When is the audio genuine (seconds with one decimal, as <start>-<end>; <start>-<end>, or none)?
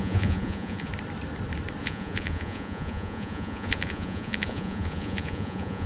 0.9-1.8